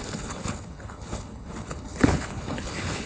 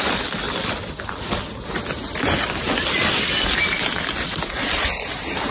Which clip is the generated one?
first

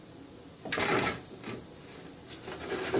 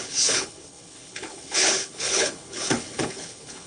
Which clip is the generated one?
second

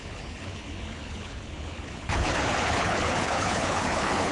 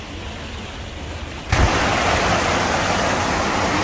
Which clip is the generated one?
first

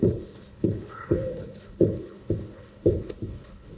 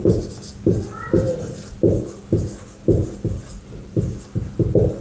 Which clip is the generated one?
first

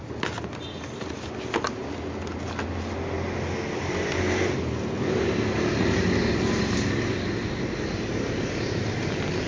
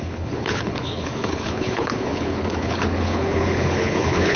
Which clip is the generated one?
second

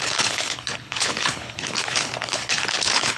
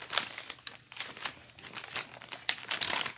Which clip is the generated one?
first